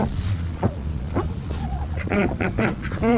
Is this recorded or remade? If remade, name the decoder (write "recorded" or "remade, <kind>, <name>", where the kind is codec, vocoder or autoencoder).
remade, vocoder, Vocos